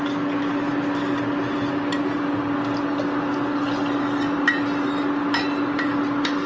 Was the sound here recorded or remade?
recorded